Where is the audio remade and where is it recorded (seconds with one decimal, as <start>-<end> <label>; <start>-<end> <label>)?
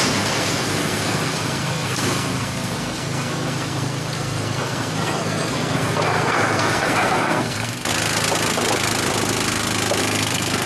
0.0-7.9 remade; 7.9-10.0 recorded; 10.0-10.7 remade